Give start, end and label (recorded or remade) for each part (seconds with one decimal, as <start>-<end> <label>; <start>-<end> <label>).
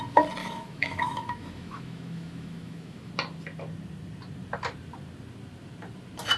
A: 0.0-0.4 recorded; 0.4-3.1 remade; 3.1-6.4 recorded